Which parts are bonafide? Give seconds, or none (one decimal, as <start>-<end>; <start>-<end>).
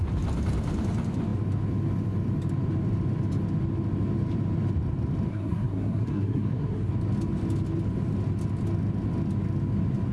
0.0-5.3; 6.9-10.1